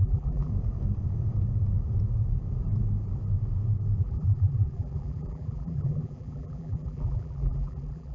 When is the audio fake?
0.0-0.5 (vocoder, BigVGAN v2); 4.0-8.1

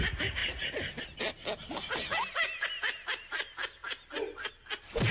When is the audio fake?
none